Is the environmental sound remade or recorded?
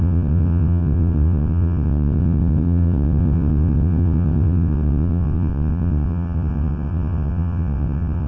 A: remade